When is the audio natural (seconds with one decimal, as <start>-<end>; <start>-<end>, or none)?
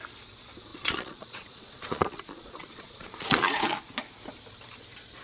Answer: 0.0-0.7; 3.8-5.2